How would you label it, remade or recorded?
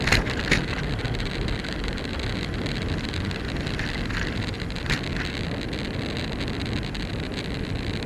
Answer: recorded